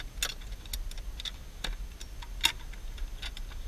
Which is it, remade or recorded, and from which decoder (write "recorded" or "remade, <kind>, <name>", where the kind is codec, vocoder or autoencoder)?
recorded